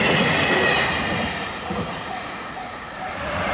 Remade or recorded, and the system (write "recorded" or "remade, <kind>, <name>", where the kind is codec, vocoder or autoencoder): remade, vocoder, Vocos